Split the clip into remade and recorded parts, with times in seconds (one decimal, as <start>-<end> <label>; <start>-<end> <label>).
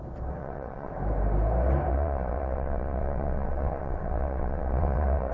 0.0-0.4 recorded; 0.4-0.9 remade; 0.9-1.9 recorded; 1.9-5.3 remade